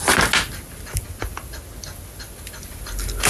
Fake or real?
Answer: real